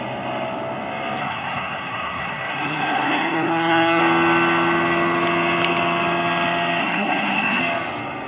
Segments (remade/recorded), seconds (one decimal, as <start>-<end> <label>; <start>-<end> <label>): 0.0-1.2 recorded; 1.2-4.0 remade; 4.0-6.8 recorded; 6.8-7.6 remade; 7.6-8.3 recorded